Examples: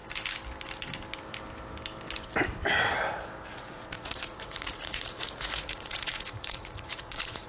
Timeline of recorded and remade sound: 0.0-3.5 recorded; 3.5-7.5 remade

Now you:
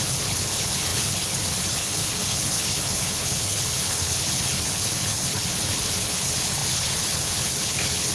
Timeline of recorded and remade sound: 0.0-8.1 remade